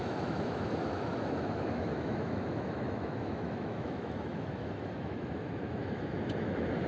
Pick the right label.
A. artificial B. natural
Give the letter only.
A